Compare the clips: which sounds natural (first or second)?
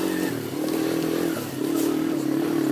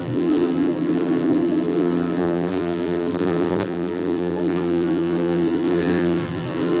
first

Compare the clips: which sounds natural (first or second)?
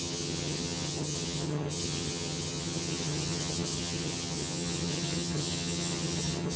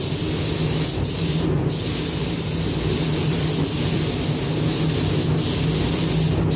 second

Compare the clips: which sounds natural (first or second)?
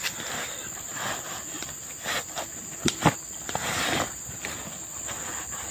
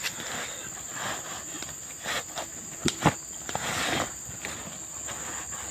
second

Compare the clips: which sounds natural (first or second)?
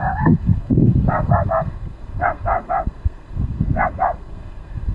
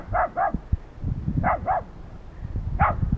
second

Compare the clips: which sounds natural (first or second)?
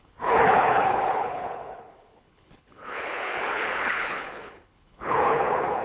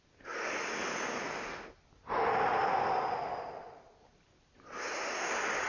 second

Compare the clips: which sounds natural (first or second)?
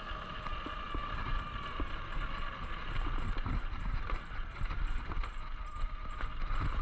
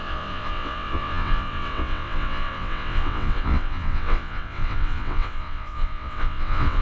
first